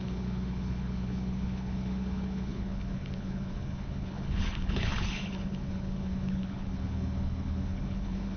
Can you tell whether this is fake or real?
fake